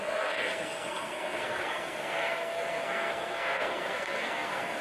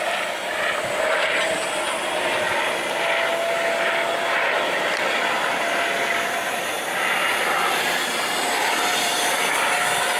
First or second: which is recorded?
second